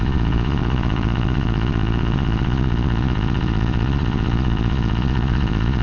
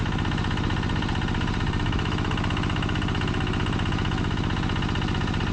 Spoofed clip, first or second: first